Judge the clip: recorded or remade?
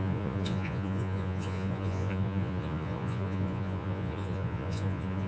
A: remade